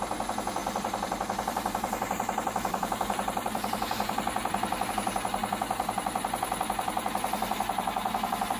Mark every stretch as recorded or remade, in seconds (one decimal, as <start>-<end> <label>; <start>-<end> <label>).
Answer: 0.0-0.6 recorded; 0.6-4.9 remade; 4.9-5.4 recorded; 5.4-6.0 remade; 6.0-8.6 recorded